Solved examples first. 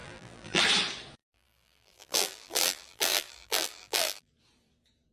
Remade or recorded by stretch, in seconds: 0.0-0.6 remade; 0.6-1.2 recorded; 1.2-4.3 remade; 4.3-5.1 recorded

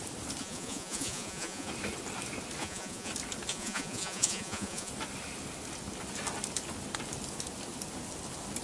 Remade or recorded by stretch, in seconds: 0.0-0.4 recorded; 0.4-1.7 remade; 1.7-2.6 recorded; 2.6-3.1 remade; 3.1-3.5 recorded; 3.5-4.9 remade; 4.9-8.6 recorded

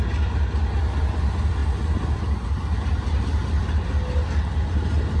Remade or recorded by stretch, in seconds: 0.0-5.2 recorded